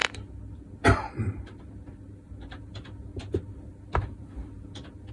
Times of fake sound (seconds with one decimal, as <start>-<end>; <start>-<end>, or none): 0.0-2.6; 3.1-5.1